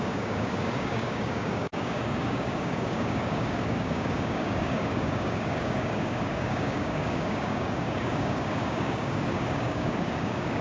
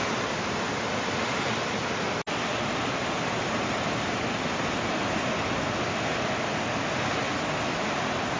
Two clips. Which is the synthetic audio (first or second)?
first